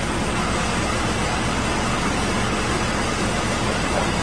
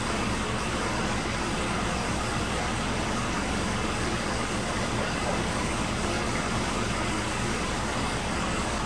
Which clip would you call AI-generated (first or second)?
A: second